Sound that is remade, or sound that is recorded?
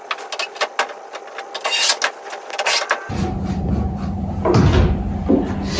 recorded